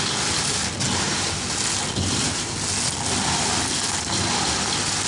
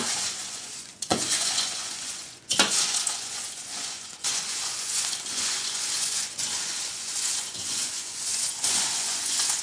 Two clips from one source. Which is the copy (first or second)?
second